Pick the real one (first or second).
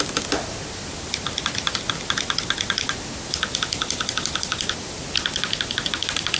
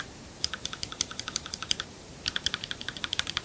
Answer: first